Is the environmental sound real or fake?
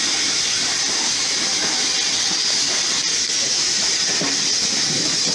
real